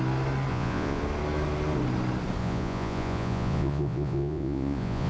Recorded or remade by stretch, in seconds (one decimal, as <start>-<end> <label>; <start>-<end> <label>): 0.0-0.5 recorded; 0.5-1.0 remade; 1.0-2.4 recorded; 2.4-5.1 remade